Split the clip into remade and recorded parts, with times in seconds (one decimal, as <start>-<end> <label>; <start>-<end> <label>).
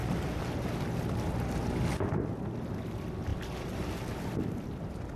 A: 0.0-5.2 recorded